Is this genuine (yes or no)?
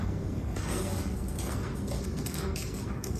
no